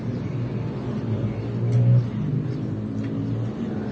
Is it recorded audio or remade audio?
recorded